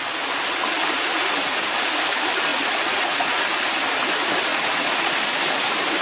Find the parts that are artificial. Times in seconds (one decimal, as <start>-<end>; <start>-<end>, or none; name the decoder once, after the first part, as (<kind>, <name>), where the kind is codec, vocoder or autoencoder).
2.5-3.4 (vocoder, Vocos); 4.5-5.1